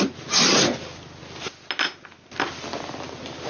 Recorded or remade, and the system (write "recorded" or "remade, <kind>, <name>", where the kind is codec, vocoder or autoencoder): recorded